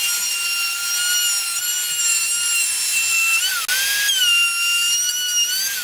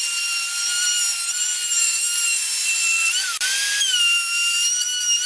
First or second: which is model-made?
second